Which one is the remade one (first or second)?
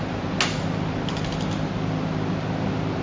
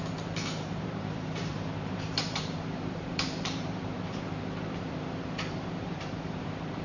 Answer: second